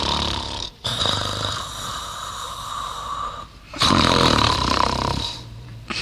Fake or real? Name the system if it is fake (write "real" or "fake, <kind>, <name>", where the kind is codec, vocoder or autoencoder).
fake, vocoder, BigVGAN v2